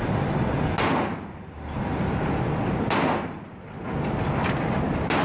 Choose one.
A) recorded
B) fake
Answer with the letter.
A